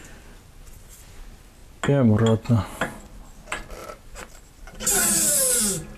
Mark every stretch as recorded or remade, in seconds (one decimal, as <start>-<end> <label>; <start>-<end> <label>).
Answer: 0.0-3.8 recorded; 3.8-5.6 remade; 5.6-6.0 recorded